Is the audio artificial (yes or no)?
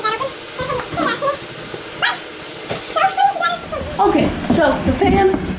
no